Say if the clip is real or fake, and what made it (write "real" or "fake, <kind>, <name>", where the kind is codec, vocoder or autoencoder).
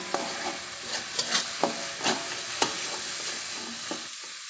real